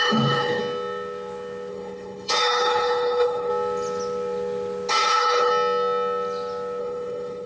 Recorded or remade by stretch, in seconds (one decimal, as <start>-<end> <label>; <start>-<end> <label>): 0.0-0.6 remade; 0.6-1.7 recorded; 1.7-3.5 remade; 3.5-4.9 recorded; 4.9-5.5 remade; 5.5-6.8 recorded; 6.8-7.5 remade